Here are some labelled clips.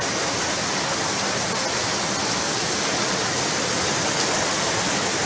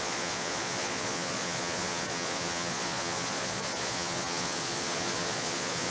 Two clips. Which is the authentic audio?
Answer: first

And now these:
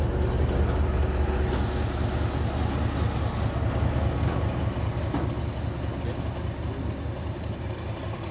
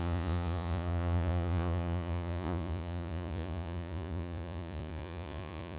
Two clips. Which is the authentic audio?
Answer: first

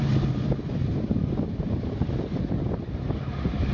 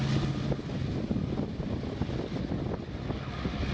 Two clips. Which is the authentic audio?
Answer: second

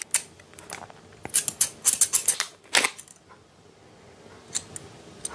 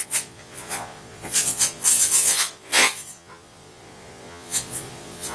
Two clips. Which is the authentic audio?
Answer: first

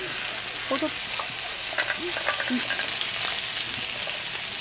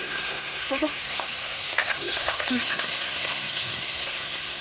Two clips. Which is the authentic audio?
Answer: first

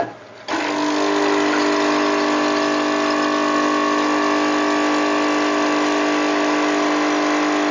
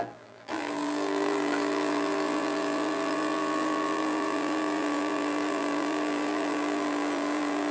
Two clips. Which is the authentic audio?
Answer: first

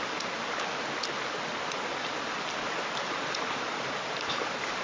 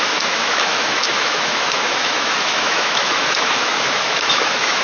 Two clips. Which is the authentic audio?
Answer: first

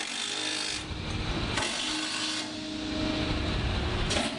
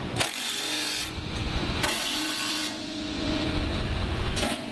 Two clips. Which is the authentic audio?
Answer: first